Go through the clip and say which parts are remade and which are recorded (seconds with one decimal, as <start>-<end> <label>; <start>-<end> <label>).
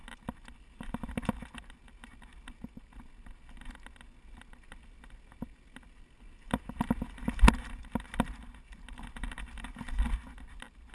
0.0-10.9 recorded